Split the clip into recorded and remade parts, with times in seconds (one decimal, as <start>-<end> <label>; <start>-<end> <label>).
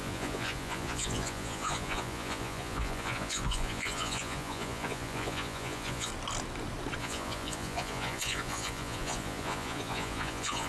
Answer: 0.0-6.1 remade; 6.1-7.0 recorded; 7.0-10.7 remade